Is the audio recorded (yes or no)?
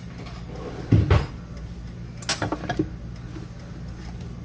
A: yes